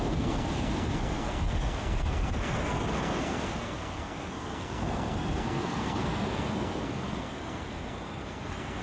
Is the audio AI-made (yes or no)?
yes